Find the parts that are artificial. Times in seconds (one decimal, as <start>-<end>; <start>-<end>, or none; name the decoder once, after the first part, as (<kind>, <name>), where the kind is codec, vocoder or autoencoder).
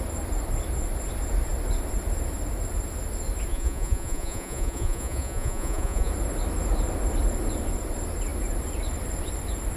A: 3.5-6.1 (vocoder, Vocos)